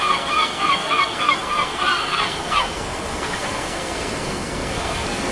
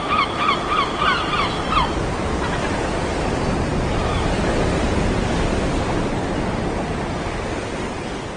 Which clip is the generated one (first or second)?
first